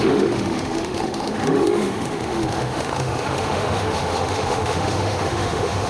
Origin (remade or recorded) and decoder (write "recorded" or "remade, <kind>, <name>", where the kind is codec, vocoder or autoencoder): remade, autoencoder, DAC-VAE